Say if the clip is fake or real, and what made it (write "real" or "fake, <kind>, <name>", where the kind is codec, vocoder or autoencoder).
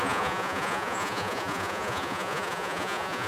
fake, vocoder, Vocos